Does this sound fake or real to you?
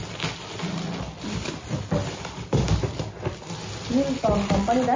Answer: real